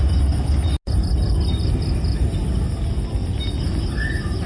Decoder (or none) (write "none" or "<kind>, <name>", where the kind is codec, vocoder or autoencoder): none